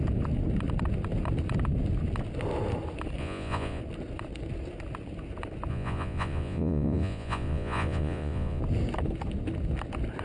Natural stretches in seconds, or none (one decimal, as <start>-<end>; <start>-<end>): 0.0-3.2; 3.8-5.7; 8.6-10.2